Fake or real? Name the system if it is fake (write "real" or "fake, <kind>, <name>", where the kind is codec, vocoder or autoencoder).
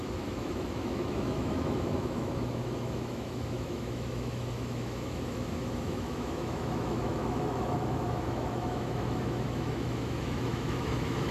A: fake, autoencoder, DAC-VAE